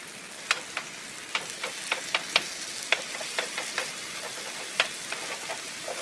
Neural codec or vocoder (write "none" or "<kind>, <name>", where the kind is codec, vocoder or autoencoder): none